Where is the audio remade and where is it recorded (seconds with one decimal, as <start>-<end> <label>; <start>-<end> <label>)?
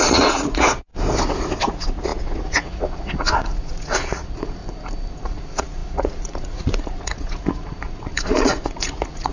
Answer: 0.0-0.9 remade; 0.9-1.6 recorded; 1.6-4.6 remade; 4.6-5.1 recorded; 5.1-9.3 remade